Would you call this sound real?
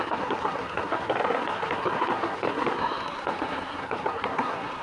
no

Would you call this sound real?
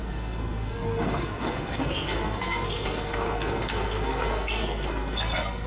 no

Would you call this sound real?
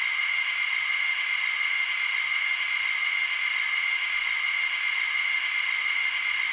yes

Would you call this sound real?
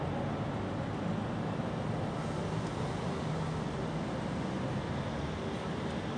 yes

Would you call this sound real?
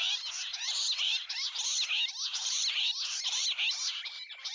yes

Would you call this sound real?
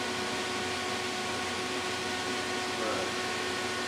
yes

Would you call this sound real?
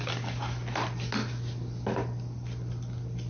yes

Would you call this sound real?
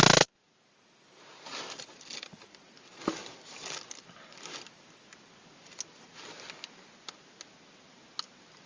yes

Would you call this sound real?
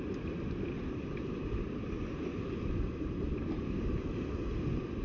yes